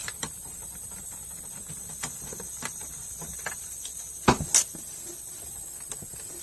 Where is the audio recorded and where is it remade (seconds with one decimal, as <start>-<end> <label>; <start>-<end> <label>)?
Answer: 0.0-3.8 remade; 3.8-6.4 recorded

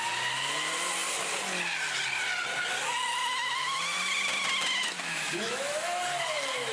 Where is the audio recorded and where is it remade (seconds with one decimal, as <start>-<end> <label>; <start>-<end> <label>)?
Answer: 0.0-3.2 recorded; 3.2-3.8 remade; 3.8-4.8 recorded; 4.8-6.0 remade; 6.0-6.7 recorded

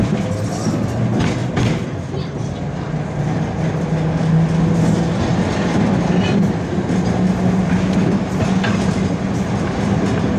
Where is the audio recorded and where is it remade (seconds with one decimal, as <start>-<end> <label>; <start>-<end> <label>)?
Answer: 0.0-10.4 recorded

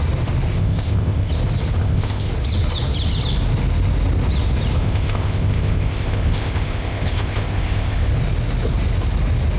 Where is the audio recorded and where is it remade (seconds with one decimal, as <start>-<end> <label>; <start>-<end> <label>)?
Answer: 0.0-0.6 recorded; 0.6-1.3 remade; 1.3-1.8 recorded; 1.8-2.3 remade; 2.3-4.8 recorded; 4.8-8.1 remade; 8.1-9.6 recorded

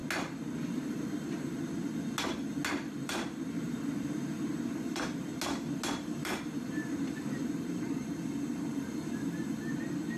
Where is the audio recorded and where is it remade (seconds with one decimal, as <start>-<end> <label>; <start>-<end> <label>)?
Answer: 0.0-0.7 recorded; 0.7-1.5 remade; 1.5-2.9 recorded; 2.9-5.3 remade; 5.3-5.9 recorded; 5.9-10.2 remade

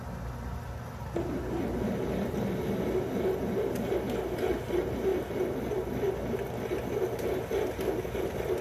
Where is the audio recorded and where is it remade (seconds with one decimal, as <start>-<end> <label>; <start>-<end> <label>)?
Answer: 0.0-8.6 recorded

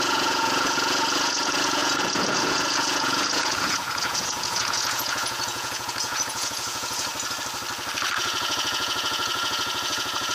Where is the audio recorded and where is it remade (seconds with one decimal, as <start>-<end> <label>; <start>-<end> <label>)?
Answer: 0.0-7.1 remade; 7.1-8.2 recorded; 8.2-10.3 remade

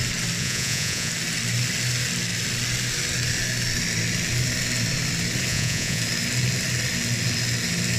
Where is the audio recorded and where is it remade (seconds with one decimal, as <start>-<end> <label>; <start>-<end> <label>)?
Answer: 0.0-0.4 recorded; 0.4-1.1 remade; 1.1-5.5 recorded; 5.5-6.0 remade; 6.0-8.0 recorded